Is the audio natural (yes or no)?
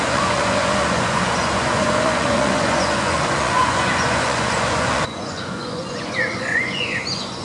no